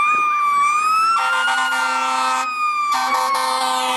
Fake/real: real